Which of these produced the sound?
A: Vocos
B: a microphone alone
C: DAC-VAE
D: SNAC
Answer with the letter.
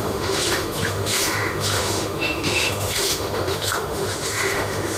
C